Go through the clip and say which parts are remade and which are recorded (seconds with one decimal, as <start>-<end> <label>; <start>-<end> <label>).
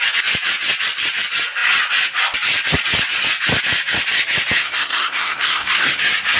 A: 0.0-4.6 recorded; 4.6-6.0 remade; 6.0-6.4 recorded